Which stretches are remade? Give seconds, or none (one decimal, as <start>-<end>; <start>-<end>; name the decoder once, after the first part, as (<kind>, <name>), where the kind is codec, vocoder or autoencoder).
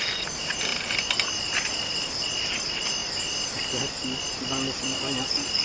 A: 0.7-1.4 (vocoder, BigVGAN v2); 3.0-3.8